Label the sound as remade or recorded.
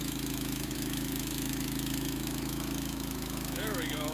remade